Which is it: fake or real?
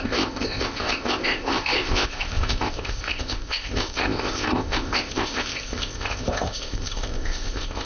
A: fake